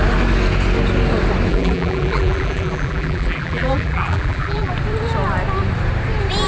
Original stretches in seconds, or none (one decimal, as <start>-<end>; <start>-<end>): 0.0-1.5; 4.7-6.5